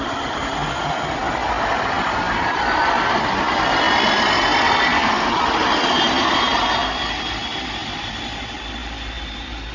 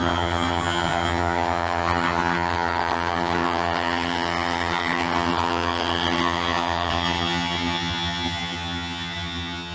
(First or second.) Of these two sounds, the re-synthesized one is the second